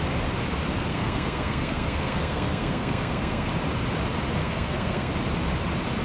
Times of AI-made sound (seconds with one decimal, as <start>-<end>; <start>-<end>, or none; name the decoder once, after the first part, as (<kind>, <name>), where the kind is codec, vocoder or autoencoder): 0.9-3.5 (codec, SNAC); 4.4-5.1

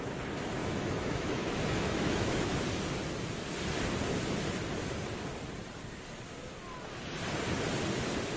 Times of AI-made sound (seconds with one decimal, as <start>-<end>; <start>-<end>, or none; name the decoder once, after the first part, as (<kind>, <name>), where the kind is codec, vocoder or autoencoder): 0.6-2.5 (autoencoder, DAC-VAE)

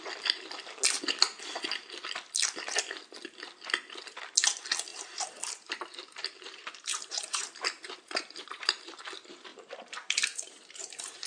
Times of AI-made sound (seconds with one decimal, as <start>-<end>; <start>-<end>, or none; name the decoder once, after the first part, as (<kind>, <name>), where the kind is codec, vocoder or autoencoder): 4.9-9.0 (vocoder, BigVGAN v2); 9.5-11.3